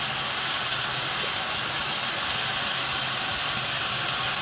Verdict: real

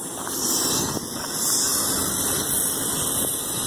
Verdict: real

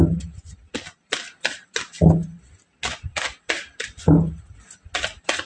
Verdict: real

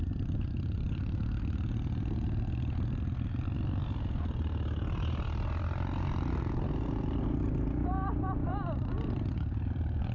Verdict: real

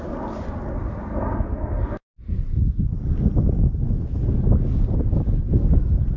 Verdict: real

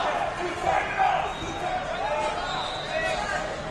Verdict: real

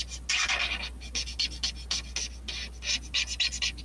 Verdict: real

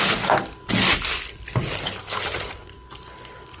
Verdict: real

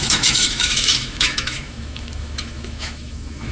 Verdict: fake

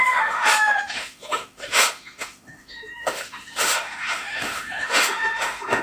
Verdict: fake